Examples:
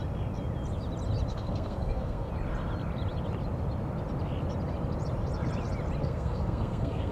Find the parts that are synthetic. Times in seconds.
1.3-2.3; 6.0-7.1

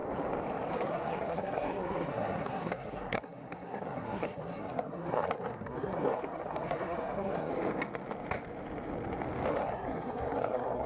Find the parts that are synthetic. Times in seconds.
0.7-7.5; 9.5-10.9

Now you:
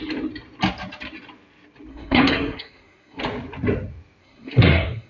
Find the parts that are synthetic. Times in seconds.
1.9-3.2; 4.2-5.1